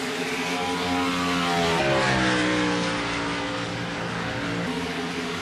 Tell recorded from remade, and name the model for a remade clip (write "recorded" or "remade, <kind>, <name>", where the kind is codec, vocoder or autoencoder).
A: remade, codec, DAC